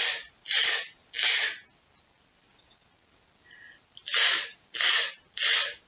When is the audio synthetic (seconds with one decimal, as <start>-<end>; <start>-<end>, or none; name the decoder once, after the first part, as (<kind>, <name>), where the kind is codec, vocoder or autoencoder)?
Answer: none